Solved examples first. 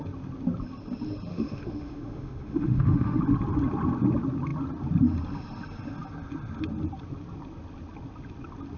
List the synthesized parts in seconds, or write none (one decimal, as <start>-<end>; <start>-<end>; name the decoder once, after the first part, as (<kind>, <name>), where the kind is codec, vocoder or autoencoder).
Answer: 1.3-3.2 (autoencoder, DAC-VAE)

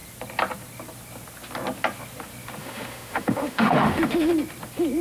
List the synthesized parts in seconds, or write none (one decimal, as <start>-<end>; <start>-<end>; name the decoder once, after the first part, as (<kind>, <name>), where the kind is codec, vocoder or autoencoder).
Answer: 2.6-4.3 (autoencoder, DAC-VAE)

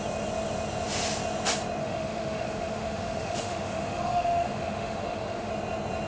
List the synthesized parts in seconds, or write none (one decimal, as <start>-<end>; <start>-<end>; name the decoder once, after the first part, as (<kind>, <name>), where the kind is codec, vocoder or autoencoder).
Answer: 1.8-5.5 (autoencoder, DAC-VAE)

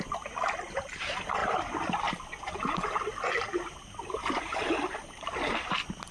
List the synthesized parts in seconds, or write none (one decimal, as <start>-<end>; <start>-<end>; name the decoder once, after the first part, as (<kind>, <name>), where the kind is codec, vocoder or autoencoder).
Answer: none

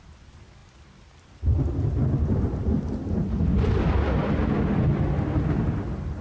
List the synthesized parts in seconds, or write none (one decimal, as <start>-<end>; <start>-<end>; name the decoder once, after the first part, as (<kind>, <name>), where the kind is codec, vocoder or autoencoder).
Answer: none

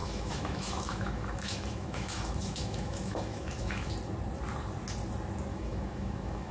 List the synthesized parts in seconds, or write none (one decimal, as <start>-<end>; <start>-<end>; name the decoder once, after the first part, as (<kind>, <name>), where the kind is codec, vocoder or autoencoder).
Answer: 0.0-3.9 (autoencoder, DAC-VAE); 5.5-6.5

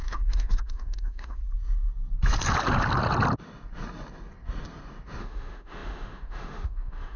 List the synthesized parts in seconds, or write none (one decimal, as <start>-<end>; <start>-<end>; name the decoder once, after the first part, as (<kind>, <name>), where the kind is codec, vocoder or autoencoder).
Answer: 0.0-1.4 (autoencoder, DAC-VAE); 5.2-7.2

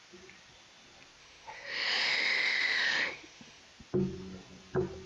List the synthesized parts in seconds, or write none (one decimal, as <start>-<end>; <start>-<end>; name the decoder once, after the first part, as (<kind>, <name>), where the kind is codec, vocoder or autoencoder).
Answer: 1.2-3.6 (autoencoder, DAC-VAE)